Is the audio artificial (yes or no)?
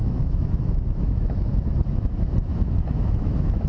yes